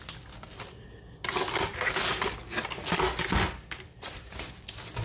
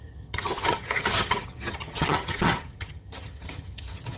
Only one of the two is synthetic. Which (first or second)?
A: second